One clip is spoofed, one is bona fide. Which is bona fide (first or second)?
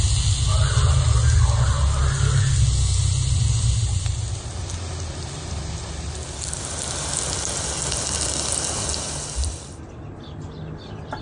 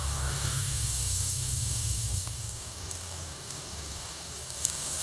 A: first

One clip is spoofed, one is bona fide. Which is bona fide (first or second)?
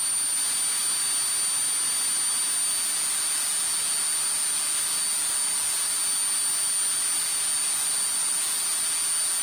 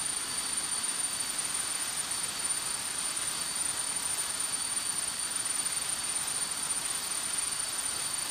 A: first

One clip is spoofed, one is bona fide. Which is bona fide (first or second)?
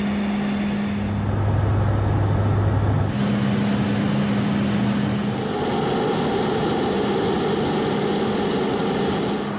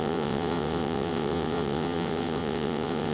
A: first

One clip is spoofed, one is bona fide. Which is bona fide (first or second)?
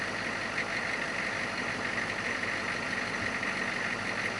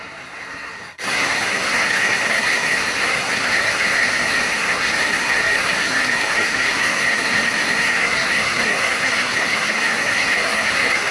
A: first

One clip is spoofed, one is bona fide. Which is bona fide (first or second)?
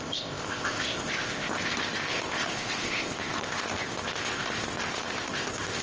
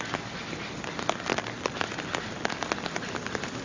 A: second